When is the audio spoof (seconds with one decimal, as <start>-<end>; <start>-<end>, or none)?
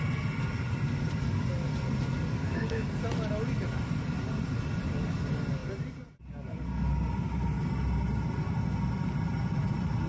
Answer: 2.4-3.0